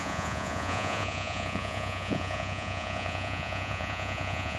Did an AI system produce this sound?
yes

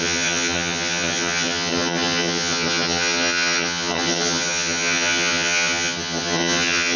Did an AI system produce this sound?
yes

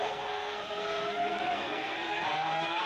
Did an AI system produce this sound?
yes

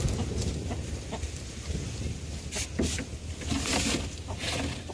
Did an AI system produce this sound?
no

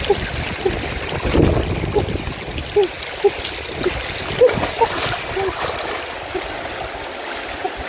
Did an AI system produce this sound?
no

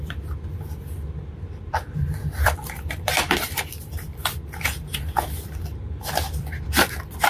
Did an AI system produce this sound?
yes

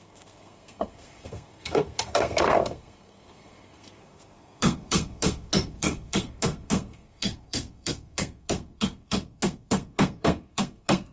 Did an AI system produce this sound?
yes